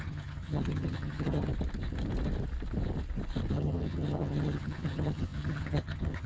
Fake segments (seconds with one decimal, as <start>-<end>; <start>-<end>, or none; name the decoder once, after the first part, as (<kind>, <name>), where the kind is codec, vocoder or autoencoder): 0.0-1.5 (vocoder, HiFi-GAN); 3.5-6.3